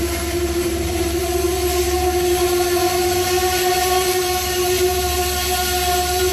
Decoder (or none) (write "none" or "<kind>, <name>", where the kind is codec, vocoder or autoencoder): none